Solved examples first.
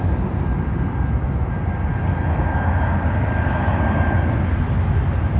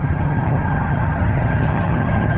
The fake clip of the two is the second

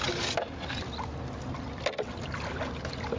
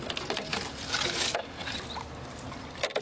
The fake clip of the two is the second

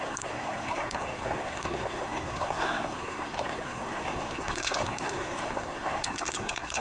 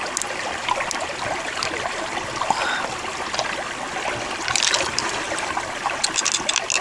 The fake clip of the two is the first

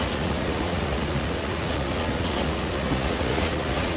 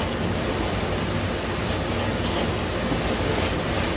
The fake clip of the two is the first